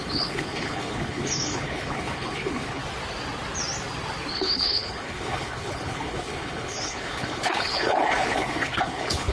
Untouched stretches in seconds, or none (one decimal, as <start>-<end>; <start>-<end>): 2.8-4.3